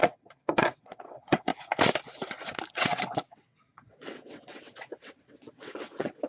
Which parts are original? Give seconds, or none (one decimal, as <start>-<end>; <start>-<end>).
1.5-2.7